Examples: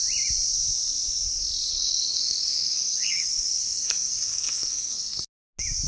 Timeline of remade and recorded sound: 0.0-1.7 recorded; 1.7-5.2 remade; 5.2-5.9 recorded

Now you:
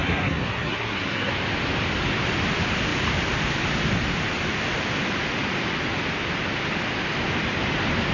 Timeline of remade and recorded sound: 0.0-1.3 remade; 1.3-8.1 recorded

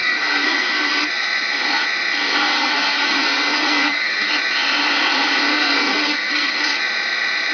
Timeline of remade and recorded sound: 0.0-1.1 remade; 1.1-2.5 recorded; 2.5-4.3 remade; 4.3-5.5 recorded; 5.5-6.8 remade; 6.8-7.5 recorded

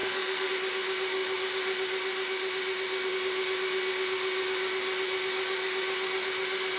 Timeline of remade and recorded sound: 0.0-0.5 remade; 0.5-6.8 recorded

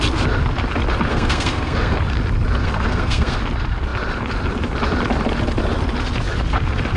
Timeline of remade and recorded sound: 0.0-1.1 recorded; 1.1-1.9 remade; 1.9-2.6 recorded; 2.6-3.4 remade; 3.4-7.0 recorded